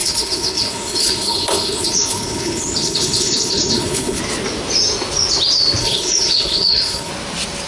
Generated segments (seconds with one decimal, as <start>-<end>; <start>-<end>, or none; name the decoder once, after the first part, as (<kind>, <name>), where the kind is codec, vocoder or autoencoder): 0.0-4.2 (codec, HILCodec); 5.8-7.1